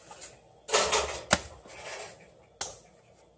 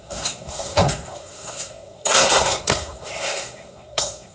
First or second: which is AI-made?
second